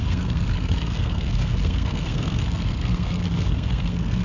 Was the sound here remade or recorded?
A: remade